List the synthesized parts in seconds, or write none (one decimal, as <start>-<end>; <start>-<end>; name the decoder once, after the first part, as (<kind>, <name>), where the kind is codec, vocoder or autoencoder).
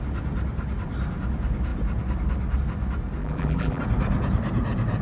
3.2-3.8 (vocoder, BigVGAN v2)